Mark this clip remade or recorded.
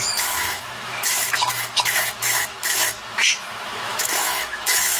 remade